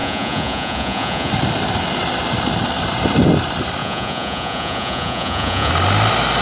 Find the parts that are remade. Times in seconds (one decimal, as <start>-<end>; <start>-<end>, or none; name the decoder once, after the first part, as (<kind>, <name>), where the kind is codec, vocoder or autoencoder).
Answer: 0.0-1.3 (vocoder, Vocos); 3.8-5.7